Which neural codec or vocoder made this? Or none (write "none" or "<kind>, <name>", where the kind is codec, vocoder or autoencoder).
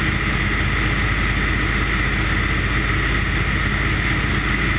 none